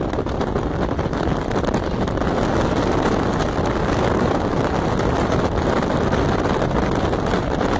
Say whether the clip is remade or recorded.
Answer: recorded